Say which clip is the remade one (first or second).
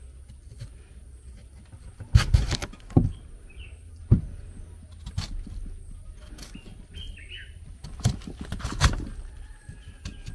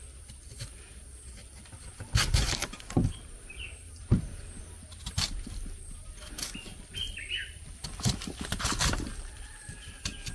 second